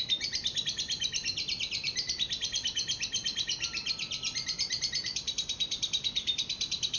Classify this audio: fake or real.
real